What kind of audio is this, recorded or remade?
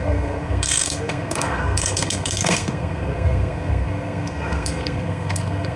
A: remade